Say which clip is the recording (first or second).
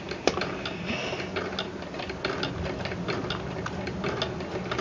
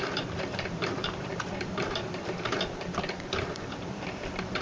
first